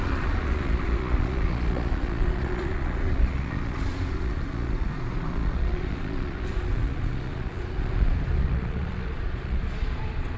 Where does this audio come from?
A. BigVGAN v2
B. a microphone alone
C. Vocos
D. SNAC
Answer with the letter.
C